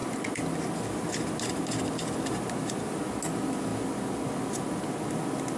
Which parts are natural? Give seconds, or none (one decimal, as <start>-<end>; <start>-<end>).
0.0-5.6